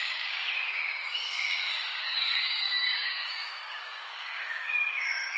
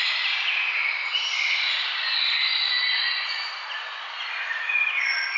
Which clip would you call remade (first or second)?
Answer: first